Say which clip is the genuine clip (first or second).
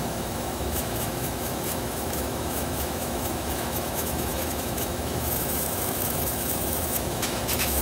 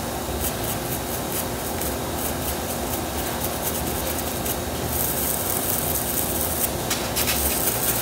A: second